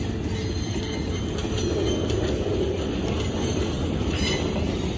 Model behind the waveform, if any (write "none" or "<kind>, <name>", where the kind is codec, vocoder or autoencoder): none